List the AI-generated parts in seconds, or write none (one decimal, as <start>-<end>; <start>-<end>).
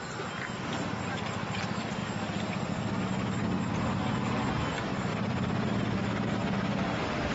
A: 2.0-2.7